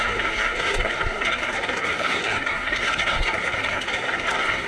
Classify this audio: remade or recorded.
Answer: remade